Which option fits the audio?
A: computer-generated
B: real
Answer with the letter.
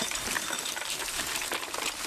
A